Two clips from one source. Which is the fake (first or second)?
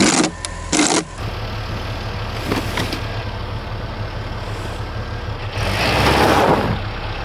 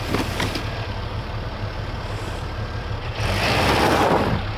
second